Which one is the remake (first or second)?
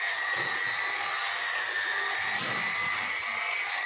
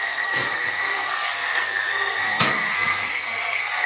second